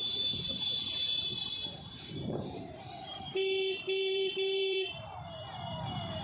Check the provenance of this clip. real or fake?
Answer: fake